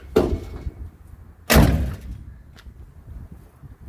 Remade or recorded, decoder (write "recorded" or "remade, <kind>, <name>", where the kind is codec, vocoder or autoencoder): recorded